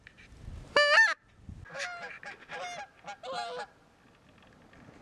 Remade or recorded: recorded